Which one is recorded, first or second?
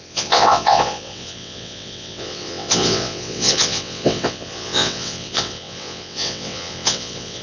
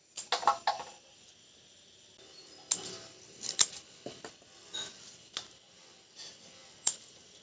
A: second